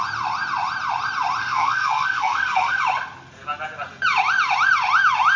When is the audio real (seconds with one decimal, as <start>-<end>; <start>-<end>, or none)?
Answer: 0.0-1.4; 2.8-5.4